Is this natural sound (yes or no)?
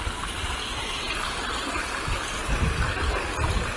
yes